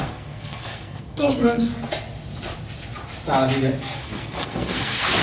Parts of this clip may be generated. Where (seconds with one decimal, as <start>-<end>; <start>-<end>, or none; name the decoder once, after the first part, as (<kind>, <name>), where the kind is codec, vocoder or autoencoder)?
0.0-1.7 (codec, SNAC); 3.8-5.2